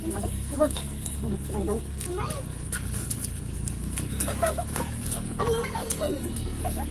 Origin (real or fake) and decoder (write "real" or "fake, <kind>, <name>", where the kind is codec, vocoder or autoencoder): fake, codec, SNAC